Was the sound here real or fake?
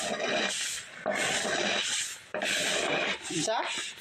real